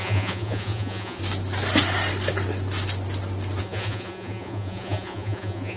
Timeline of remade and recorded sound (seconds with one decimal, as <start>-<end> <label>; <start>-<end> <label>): 0.0-1.2 remade; 1.2-3.6 recorded; 3.6-5.8 remade